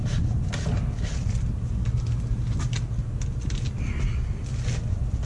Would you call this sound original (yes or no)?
yes